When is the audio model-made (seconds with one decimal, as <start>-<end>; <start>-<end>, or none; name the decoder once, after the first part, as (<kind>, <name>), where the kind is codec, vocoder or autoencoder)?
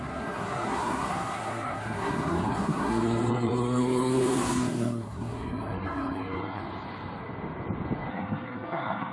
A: 0.0-6.6 (codec, SNAC); 8.1-9.1